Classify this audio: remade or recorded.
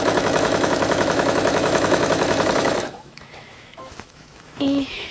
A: remade